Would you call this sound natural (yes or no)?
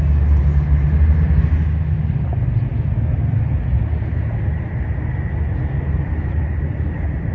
yes